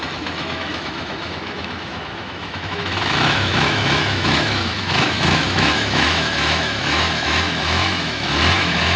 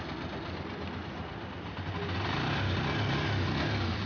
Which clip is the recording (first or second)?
second